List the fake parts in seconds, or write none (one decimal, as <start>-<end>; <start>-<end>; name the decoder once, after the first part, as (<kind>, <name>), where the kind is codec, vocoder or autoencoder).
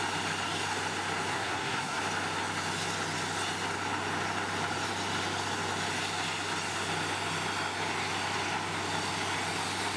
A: 1.3-2.0 (codec, SNAC)